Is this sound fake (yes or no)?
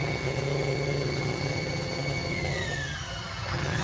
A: yes